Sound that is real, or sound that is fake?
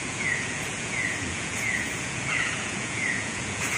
fake